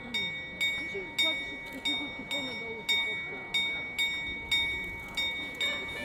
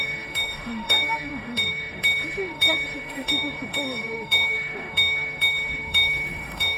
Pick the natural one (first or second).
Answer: first